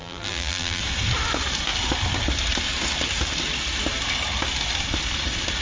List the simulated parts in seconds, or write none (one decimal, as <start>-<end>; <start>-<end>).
0.0-0.8